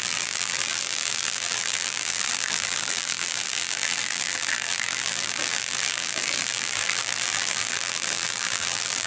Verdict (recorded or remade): remade